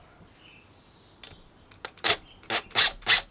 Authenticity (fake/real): real